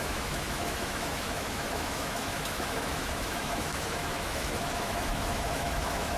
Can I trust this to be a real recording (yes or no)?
no